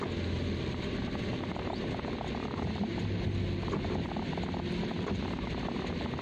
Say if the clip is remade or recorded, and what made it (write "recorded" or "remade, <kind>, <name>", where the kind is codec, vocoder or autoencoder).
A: recorded